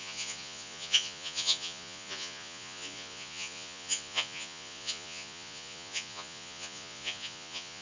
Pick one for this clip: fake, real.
fake